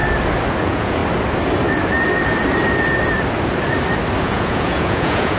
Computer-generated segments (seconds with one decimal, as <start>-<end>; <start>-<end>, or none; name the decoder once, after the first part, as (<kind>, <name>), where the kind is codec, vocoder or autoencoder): 0.6-1.0 (vocoder, Vocos); 4.2-5.4